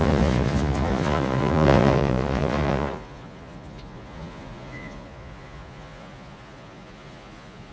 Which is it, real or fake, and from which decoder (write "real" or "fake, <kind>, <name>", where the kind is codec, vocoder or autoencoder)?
fake, vocoder, Vocos